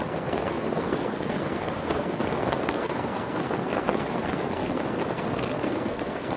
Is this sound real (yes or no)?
no